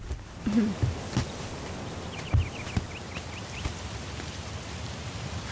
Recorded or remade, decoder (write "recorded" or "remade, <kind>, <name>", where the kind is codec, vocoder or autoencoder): recorded